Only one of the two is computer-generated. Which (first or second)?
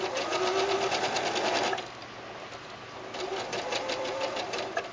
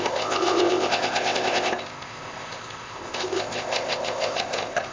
second